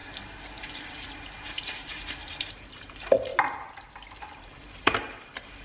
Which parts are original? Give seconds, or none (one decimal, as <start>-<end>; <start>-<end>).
3.3-4.2